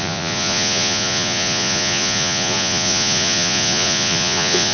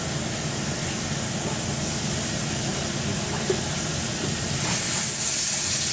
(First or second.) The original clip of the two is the second